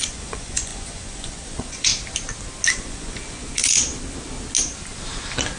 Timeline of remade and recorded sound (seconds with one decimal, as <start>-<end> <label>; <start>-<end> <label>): 0.0-1.9 remade; 1.9-2.7 recorded; 2.7-3.6 remade; 3.6-5.6 recorded